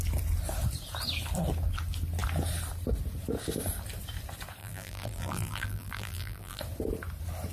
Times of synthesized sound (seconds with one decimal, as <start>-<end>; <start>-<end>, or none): 4.6-6.6